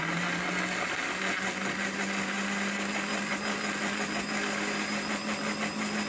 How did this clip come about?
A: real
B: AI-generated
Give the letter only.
A